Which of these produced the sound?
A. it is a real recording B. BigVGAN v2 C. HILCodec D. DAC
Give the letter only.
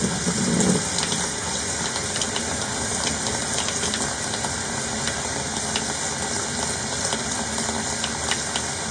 A